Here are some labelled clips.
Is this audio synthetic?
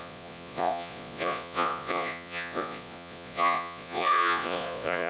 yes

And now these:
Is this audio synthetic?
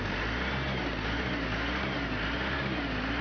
no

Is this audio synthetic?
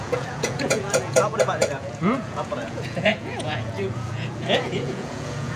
yes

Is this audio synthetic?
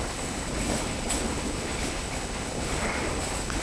yes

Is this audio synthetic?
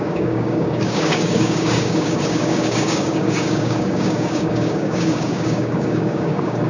yes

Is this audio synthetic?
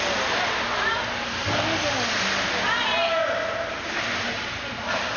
no